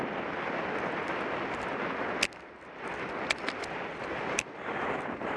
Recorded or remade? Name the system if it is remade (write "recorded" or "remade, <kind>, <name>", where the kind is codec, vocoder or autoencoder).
recorded